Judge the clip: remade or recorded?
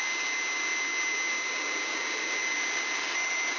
recorded